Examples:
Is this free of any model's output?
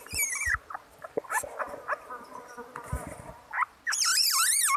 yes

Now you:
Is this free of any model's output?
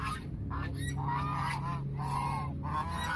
yes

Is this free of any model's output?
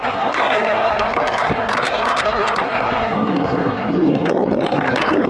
no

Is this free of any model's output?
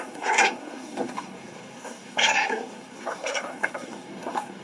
no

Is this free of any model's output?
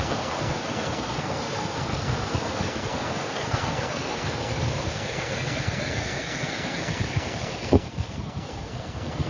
no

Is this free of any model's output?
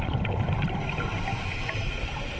yes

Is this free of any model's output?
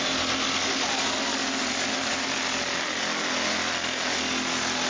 yes